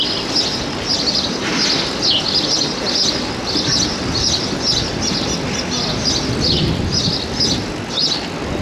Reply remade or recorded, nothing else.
recorded